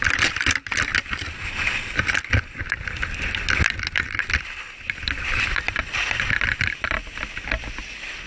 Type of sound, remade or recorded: recorded